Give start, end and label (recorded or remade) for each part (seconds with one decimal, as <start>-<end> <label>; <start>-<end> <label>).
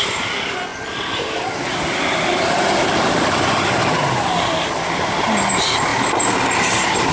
0.0-0.7 recorded; 0.7-5.0 remade; 5.0-5.9 recorded; 5.9-6.5 remade; 6.5-7.1 recorded